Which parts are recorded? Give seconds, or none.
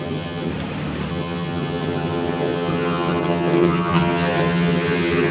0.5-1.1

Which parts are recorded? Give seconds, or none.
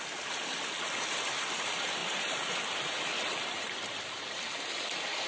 0.0-5.3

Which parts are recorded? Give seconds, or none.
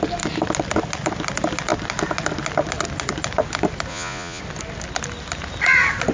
0.0-3.9; 4.4-6.1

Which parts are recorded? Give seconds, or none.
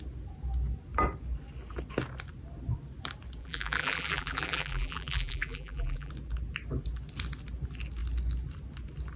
0.0-3.4; 6.1-9.2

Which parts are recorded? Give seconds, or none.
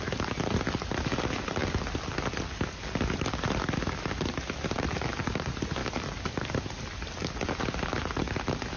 0.0-5.8; 6.6-7.2; 7.9-8.8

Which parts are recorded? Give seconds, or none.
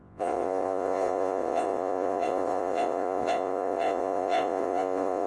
none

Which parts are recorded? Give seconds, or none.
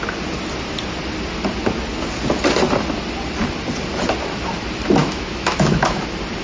0.0-5.0; 6.0-6.4